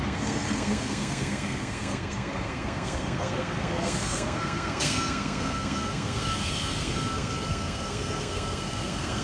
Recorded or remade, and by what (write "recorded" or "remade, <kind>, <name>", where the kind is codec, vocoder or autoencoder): remade, codec, SNAC